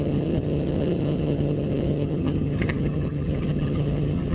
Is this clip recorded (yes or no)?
no